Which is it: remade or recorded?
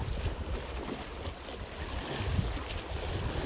recorded